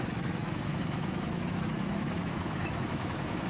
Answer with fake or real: fake